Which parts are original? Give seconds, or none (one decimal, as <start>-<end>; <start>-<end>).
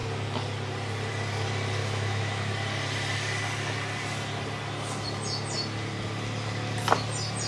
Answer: 0.0-1.8; 2.5-7.5